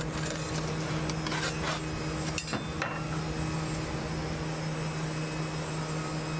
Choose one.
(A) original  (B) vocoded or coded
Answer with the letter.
A